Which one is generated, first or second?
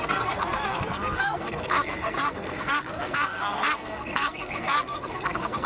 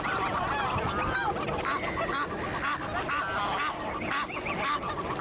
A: first